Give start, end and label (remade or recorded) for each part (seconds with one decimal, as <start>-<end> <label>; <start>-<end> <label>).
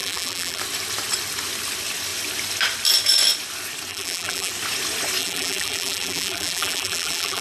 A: 0.0-0.6 remade; 0.6-3.9 recorded; 3.9-4.5 remade; 4.5-5.2 recorded; 5.2-7.4 remade